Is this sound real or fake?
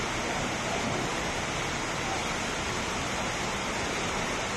real